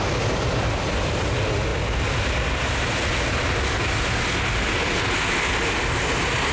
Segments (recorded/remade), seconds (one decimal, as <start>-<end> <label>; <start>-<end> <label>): 0.0-6.5 recorded